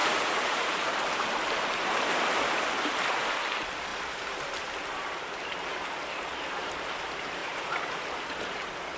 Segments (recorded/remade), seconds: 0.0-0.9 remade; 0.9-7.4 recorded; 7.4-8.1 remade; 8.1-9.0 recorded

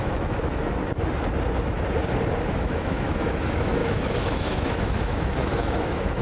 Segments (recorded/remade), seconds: 0.0-0.6 remade; 0.6-2.5 recorded; 2.5-6.2 remade

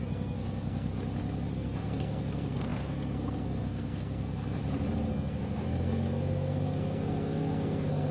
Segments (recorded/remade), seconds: 0.0-0.9 remade; 0.9-1.5 recorded; 1.5-4.6 remade; 4.6-5.1 recorded; 5.1-8.1 remade